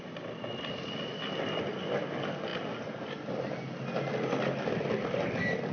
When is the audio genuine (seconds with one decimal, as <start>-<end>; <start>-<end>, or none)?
0.0-5.7